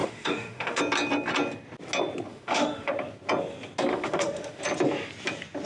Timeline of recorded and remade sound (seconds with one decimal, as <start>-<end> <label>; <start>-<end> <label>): 0.0-0.8 remade; 0.8-2.3 recorded; 2.3-2.9 remade; 2.9-3.9 recorded; 3.9-4.6 remade; 4.6-5.7 recorded